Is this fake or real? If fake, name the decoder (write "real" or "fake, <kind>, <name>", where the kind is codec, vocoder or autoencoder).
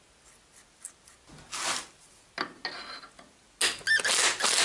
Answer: real